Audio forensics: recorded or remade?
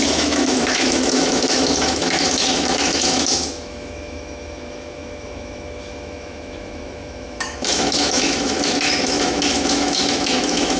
remade